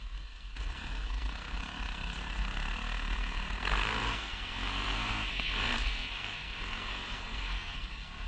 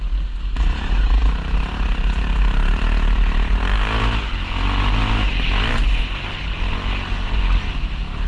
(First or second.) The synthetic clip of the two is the first